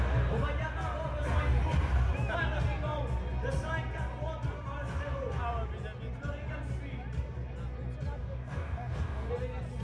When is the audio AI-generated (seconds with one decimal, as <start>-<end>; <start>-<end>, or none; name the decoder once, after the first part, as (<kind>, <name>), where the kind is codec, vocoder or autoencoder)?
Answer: 8.2-9.3 (codec, DAC)